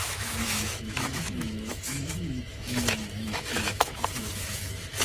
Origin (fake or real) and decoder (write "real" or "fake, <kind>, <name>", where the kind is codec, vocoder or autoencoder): fake, autoencoder, DAC-VAE